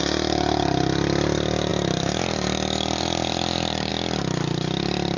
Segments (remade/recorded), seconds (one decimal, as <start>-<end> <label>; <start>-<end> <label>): 0.0-1.7 recorded; 1.7-3.9 remade; 3.9-5.2 recorded